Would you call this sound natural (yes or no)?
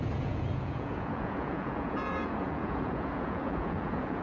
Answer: no